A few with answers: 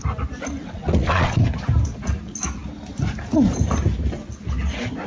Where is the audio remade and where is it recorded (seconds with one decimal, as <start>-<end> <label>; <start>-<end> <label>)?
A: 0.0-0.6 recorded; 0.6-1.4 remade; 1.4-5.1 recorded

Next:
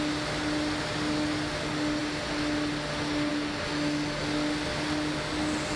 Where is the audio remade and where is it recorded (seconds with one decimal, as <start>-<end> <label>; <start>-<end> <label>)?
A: 0.0-5.8 recorded

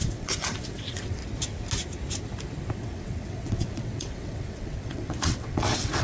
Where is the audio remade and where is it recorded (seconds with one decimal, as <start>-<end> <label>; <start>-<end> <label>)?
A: 0.0-1.2 remade; 1.2-2.7 recorded; 2.7-6.0 remade

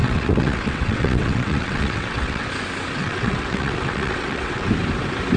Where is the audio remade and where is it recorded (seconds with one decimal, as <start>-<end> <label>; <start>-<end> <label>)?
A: 0.0-2.5 remade; 2.5-3.0 recorded; 3.0-4.7 remade; 4.7-5.4 recorded

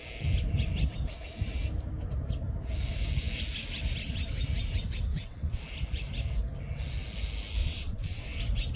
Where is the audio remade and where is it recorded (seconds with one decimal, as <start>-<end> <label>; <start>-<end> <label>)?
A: 0.0-5.1 recorded; 5.1-5.6 remade; 5.6-7.6 recorded; 7.6-8.4 remade; 8.4-8.8 recorded

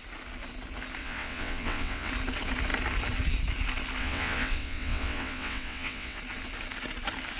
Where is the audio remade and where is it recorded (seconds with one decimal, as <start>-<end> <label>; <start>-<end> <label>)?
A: 0.0-1.0 recorded; 1.0-2.1 remade; 2.1-4.0 recorded; 4.0-6.2 remade; 6.2-7.4 recorded

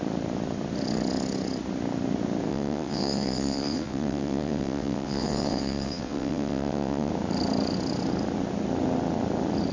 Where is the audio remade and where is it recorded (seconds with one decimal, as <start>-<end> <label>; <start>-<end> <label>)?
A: 0.0-2.5 recorded; 2.5-7.1 remade; 7.1-9.7 recorded